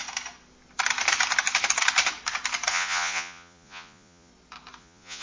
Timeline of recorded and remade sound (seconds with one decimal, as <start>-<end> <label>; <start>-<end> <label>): 0.0-2.7 recorded; 2.7-4.3 remade; 4.3-4.8 recorded; 4.8-5.2 remade